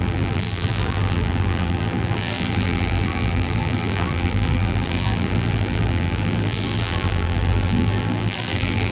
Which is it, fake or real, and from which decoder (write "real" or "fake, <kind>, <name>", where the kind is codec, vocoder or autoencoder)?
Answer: fake, vocoder, BigVGAN v2